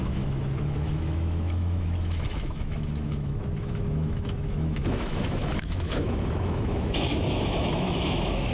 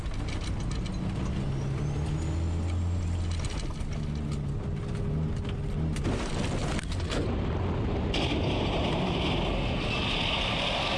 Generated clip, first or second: first